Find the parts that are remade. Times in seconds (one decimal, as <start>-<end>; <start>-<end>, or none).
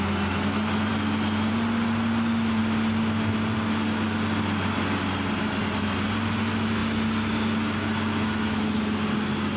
none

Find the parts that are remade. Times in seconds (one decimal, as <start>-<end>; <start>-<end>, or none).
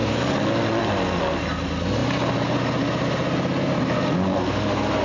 none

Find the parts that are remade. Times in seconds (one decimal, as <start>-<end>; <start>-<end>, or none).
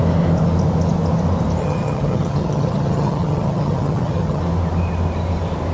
1.6-4.4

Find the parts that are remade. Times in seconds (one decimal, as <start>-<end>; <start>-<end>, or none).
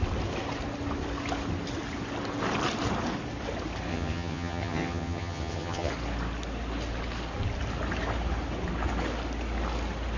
3.9-5.9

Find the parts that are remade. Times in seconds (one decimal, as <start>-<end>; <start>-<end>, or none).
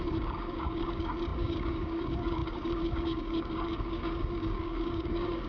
0.0-5.5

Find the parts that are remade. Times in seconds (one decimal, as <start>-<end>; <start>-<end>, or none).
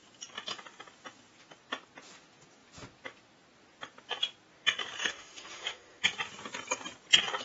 5.0-6.0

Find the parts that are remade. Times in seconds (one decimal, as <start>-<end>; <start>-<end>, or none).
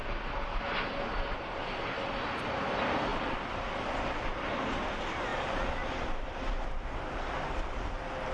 0.0-0.6; 3.1-3.9; 5.3-6.7